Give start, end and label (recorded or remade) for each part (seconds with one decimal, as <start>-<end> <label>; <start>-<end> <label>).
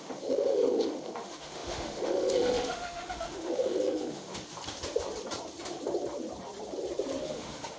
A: 0.0-4.4 remade; 4.4-7.2 recorded; 7.2-7.8 remade